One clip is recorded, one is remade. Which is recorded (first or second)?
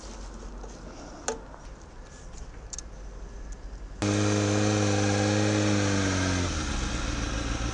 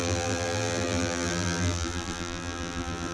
first